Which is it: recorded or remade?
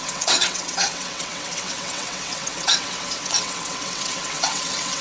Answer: remade